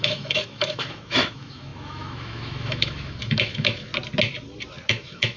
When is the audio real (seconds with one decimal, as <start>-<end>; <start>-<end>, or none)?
3.9-4.9